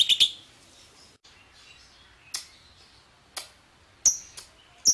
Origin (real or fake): real